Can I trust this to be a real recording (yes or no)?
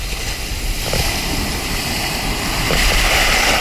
yes